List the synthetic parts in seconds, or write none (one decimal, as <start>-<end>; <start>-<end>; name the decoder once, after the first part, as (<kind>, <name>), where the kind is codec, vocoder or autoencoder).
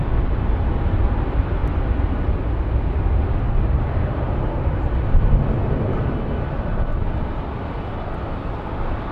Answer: none